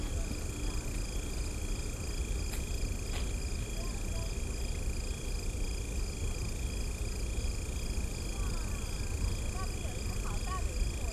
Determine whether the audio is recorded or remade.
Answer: recorded